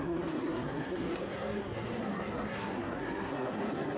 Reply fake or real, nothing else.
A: fake